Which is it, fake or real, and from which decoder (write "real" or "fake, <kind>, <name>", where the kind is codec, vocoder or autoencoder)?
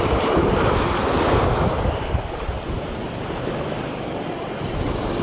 real